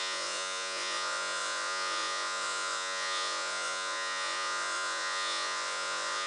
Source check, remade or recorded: remade